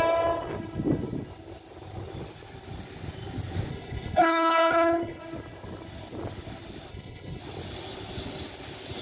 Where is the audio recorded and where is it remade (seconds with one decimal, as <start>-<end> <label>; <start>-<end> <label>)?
0.0-3.7 recorded; 3.7-5.2 remade; 5.2-6.9 recorded; 6.9-7.4 remade; 7.4-9.0 recorded